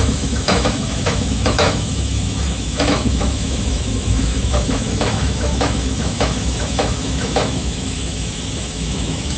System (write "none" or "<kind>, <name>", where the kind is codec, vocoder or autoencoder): autoencoder, DAC-VAE